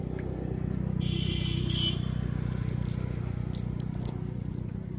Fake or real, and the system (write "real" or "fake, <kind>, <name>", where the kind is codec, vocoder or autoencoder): real